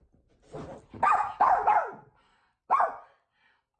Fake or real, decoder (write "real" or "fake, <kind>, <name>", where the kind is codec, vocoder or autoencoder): real